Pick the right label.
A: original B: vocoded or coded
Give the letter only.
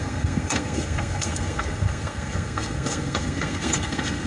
B